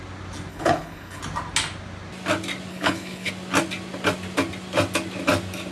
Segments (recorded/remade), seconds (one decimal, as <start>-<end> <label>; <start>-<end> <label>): 0.0-0.5 recorded; 0.5-1.2 remade; 1.2-2.7 recorded; 2.7-3.3 remade; 3.3-5.7 recorded